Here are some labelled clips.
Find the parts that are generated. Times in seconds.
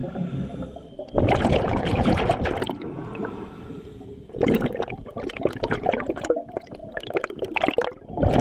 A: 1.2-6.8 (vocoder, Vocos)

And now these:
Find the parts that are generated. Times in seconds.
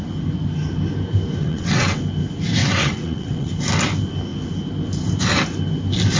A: 1.4-2.0 (vocoder, WaveNeXt); 2.6-3.5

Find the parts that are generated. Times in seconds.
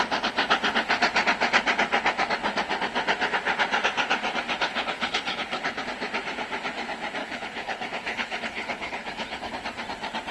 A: 4.7-5.8 (codec, HILCodec); 7.2-9.5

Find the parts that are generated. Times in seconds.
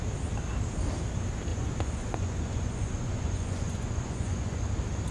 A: 1.5-4.6 (vocoder, Vocos)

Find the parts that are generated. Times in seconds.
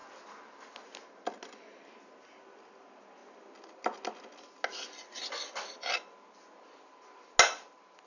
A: none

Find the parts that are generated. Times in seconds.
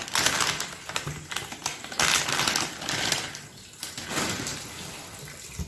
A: none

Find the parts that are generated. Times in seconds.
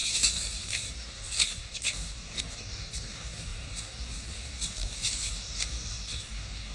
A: 0.0-6.7 (codec, DAC)